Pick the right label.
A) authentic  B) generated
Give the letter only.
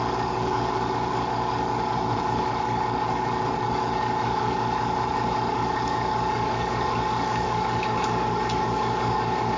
B